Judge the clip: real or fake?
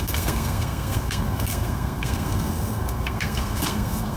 fake